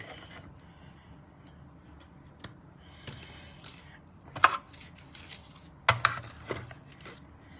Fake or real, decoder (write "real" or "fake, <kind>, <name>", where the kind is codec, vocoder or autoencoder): real